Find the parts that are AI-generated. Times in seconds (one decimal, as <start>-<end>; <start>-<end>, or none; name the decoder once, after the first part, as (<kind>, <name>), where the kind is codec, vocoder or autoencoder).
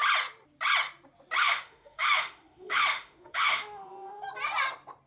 1.4-4.2 (autoencoder, DAC-VAE)